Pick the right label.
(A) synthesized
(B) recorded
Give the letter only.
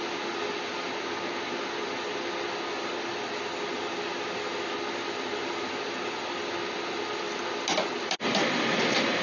B